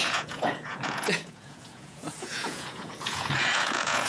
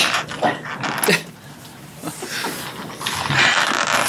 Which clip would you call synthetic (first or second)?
first